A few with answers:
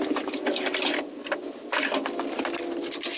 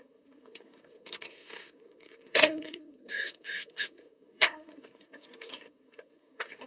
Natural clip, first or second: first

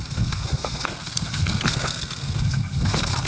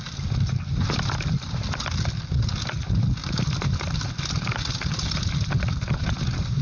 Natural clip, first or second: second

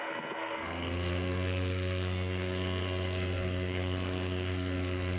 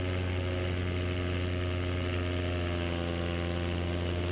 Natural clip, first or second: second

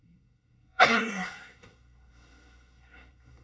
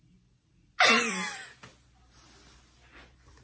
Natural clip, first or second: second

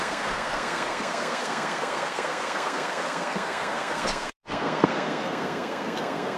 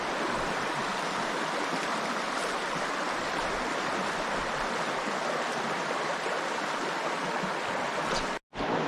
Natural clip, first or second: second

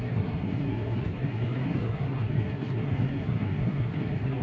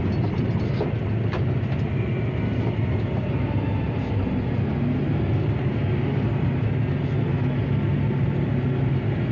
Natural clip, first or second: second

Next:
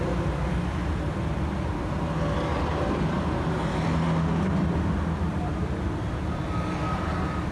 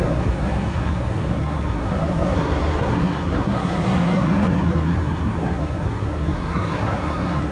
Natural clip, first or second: first